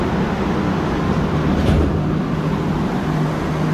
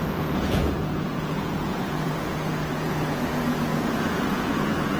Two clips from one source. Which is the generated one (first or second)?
second